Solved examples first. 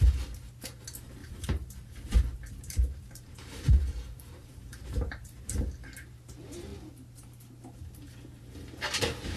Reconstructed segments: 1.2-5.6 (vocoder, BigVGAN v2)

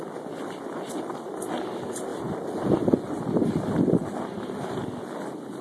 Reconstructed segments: none

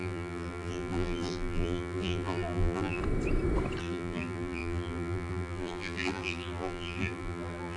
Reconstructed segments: 0.0-3.0 (vocoder, BigVGAN v2); 3.8-7.8

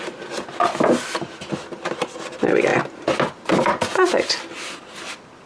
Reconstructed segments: none

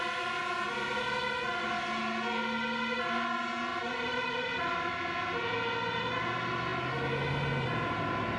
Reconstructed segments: 3.7-4.9 (vocoder, BigVGAN v2)

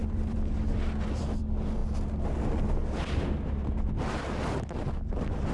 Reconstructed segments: 0.0-1.8 (vocoder, BigVGAN v2); 5.1-5.5

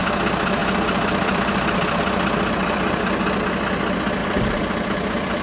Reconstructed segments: 0.6-2.0 (vocoder, BigVGAN v2); 4.2-5.4